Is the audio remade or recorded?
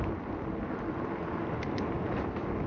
recorded